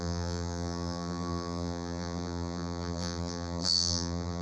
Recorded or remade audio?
remade